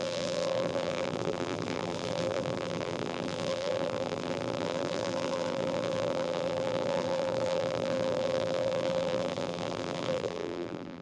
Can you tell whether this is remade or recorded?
remade